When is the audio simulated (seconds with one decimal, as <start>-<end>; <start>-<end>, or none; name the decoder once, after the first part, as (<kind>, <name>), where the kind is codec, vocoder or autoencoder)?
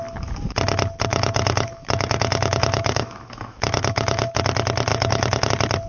1.1-4.4 (autoencoder, DAC-VAE); 4.9-5.5